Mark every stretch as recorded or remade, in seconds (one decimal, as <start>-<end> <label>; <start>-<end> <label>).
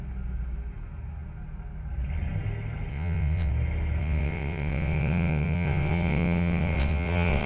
0.0-2.9 recorded; 2.9-3.5 remade; 3.5-4.0 recorded; 4.0-7.5 remade